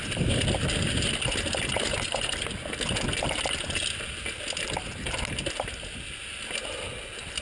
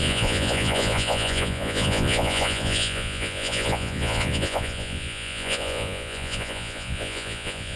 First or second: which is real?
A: first